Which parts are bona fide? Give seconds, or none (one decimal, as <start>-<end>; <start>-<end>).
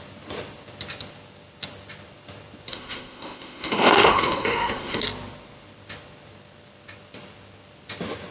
0.0-2.7; 5.0-8.3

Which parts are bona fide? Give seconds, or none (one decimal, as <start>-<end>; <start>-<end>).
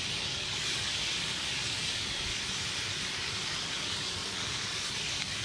2.3-3.0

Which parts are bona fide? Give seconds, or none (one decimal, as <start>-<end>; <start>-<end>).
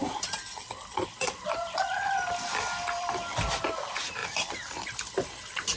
3.5-4.2; 4.9-5.8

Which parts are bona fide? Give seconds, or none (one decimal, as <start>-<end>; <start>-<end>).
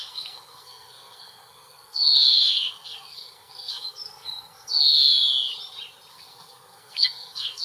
5.2-6.1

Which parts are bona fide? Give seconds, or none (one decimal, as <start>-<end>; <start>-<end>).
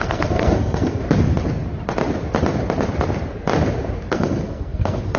1.0-4.1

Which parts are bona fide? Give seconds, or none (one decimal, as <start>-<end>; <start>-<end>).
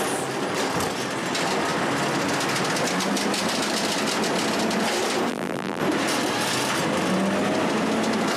0.0-5.3; 5.8-8.4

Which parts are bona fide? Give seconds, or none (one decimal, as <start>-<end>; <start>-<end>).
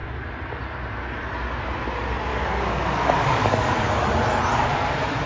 0.0-2.3; 3.8-5.3